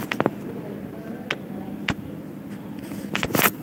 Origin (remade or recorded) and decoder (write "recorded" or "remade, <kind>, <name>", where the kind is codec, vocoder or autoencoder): recorded